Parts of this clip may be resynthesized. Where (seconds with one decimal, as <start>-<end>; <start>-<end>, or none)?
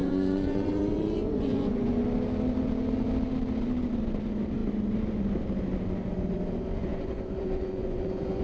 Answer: 0.0-2.0; 6.8-8.4